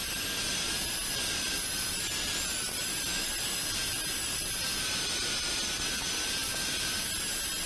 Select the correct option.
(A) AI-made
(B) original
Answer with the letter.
B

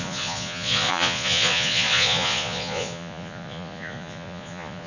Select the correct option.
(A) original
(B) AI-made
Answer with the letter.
B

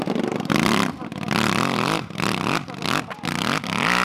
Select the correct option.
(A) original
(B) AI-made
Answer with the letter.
A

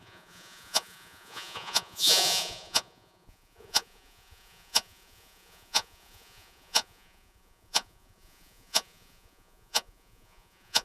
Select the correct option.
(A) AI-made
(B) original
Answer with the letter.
A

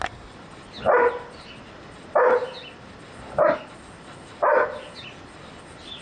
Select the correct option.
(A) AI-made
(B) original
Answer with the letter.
B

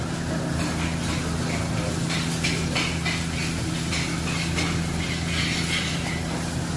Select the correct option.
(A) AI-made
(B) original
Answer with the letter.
B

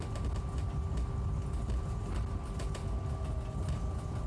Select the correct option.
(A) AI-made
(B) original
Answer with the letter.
B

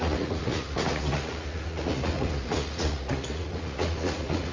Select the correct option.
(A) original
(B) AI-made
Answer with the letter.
B